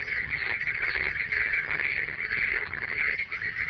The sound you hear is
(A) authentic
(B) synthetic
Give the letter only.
B